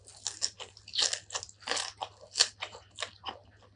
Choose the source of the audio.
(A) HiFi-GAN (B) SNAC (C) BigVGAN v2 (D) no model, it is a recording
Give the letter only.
D